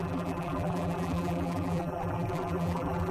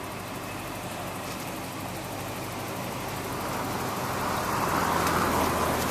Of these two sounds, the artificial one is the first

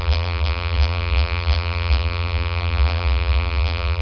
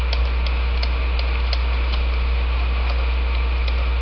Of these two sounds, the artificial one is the first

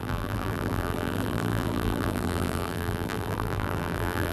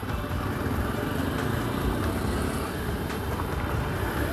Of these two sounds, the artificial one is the first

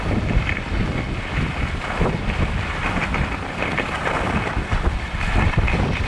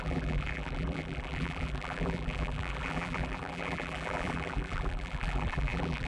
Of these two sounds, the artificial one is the second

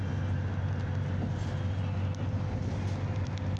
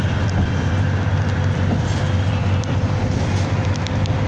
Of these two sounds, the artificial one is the second